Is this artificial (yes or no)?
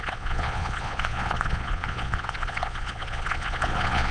yes